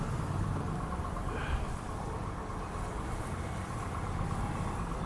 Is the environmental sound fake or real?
real